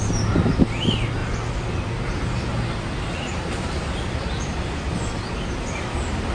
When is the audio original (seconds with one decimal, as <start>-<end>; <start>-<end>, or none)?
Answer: 0.0-3.3